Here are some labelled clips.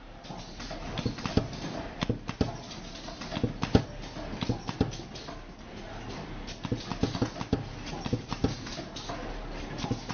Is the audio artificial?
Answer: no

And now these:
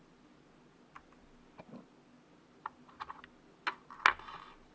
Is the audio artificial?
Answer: no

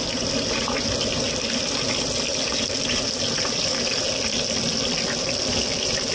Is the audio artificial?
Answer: no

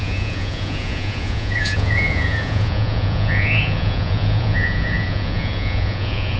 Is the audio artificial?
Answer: yes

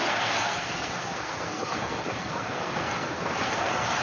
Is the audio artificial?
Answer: yes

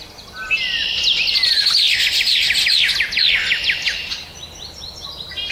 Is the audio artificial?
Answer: no